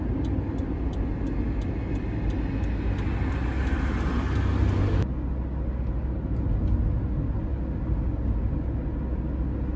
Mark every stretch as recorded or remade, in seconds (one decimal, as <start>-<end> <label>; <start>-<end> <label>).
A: 0.0-9.8 recorded